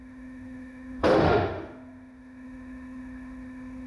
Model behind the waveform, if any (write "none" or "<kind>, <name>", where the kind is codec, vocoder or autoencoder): autoencoder, DAC-VAE